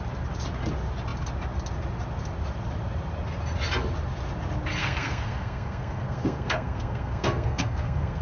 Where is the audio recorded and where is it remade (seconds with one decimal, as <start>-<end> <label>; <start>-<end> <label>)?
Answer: 0.0-4.8 recorded; 4.8-8.2 remade